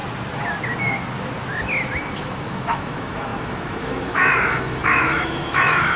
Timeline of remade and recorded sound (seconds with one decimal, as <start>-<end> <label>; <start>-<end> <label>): 0.0-2.1 recorded; 2.1-6.0 remade